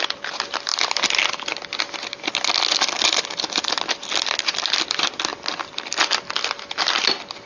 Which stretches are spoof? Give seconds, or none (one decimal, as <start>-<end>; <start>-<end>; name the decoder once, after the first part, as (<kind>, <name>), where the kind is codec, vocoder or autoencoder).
none